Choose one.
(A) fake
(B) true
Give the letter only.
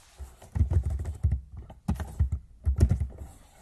B